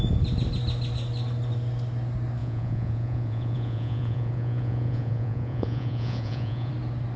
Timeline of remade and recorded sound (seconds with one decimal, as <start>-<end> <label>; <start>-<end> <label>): 0.0-2.4 recorded; 2.4-6.7 remade; 6.7-7.2 recorded

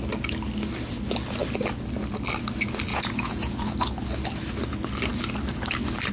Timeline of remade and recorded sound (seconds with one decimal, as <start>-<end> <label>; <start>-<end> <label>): 0.0-2.9 recorded; 2.9-3.7 remade; 3.7-6.1 recorded